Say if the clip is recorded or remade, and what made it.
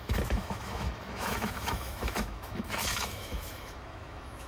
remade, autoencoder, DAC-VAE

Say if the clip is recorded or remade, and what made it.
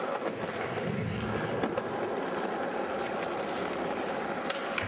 recorded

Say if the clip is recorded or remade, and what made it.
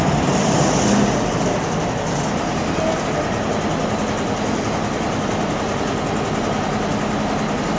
recorded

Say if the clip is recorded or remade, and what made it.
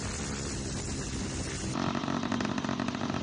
recorded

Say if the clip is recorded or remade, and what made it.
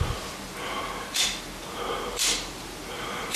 recorded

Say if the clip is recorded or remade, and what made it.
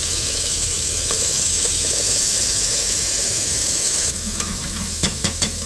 remade, autoencoder, DAC-VAE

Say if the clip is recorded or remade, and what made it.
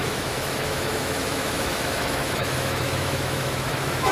remade, autoencoder, DAC-VAE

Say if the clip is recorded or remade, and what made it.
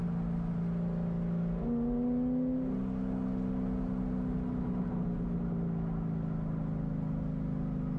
recorded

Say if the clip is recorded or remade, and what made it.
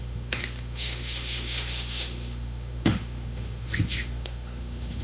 remade, autoencoder, DAC-VAE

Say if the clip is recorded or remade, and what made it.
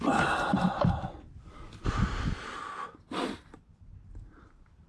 recorded